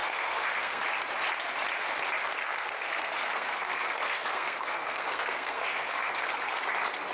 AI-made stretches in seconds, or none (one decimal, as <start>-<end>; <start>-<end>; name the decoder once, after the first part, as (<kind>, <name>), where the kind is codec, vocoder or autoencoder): 0.0-0.8 (codec, SNAC); 2.4-6.6